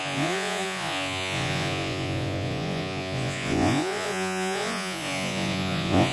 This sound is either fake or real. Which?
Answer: fake